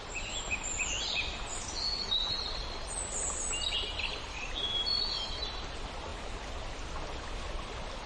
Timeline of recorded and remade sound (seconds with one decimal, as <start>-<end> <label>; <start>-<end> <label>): 0.0-8.1 recorded